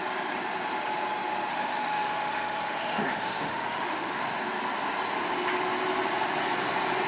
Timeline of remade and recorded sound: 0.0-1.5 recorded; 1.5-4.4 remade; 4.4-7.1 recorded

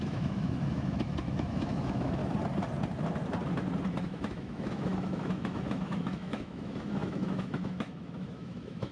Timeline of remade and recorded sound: 0.0-2.2 remade; 2.2-3.9 recorded; 3.9-8.9 remade

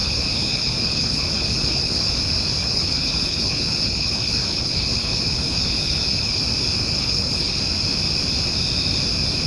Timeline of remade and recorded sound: 0.0-2.2 remade; 2.2-2.6 recorded; 2.6-6.4 remade; 6.4-7.0 recorded; 7.0-7.6 remade; 7.6-9.5 recorded

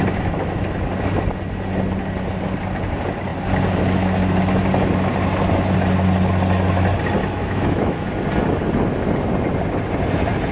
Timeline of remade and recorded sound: 0.0-7.2 recorded; 7.2-8.1 remade; 8.1-10.5 recorded

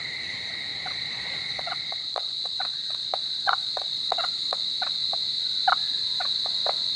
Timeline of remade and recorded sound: 0.0-0.7 recorded; 0.7-4.6 remade; 4.6-7.0 recorded